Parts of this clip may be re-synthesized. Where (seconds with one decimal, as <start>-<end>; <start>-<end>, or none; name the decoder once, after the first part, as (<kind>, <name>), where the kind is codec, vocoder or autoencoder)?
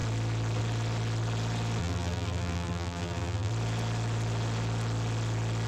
1.8-3.5 (vocoder, BigVGAN v2)